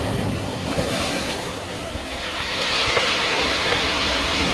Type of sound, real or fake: fake